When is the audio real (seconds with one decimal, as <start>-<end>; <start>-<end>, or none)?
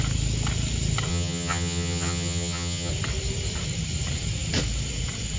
0.0-1.1; 2.9-5.4